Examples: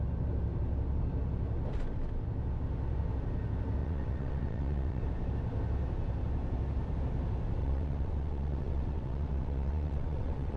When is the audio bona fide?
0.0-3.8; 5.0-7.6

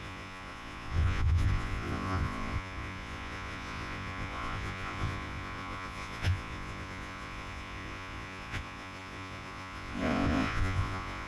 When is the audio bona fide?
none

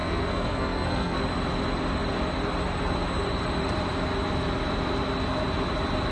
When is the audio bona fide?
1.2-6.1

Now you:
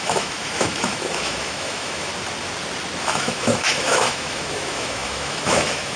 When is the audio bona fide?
2.1-3.0